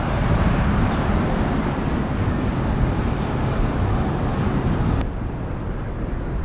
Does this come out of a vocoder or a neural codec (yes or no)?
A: no